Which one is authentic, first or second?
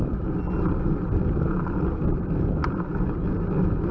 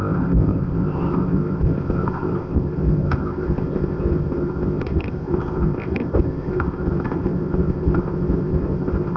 first